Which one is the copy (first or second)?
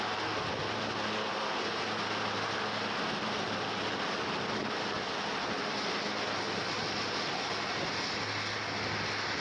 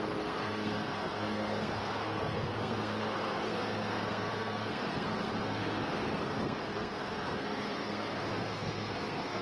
second